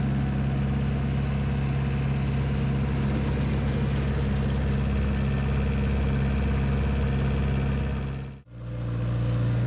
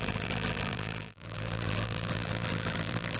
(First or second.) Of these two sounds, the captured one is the first